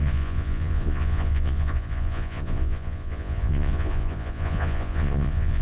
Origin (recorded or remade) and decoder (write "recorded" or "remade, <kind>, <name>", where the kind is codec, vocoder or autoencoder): remade, vocoder, Vocos